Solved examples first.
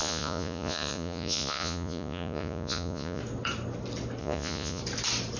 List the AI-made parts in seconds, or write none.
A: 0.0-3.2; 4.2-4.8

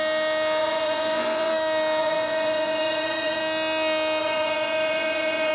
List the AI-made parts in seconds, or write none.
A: 0.6-1.5; 2.0-3.4; 4.2-5.5

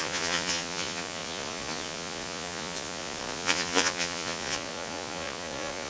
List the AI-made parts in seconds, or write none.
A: 0.0-5.9

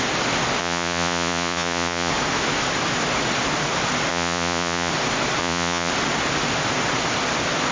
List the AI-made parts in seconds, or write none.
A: 0.6-2.1; 4.1-4.9; 5.4-5.9

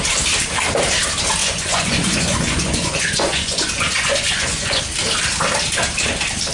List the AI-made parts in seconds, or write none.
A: 1.4-4.8